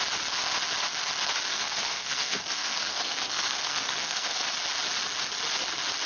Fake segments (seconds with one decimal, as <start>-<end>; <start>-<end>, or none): 1.5-4.5